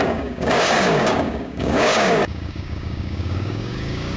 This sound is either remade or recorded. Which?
remade